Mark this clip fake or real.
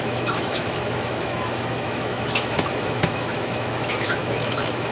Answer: fake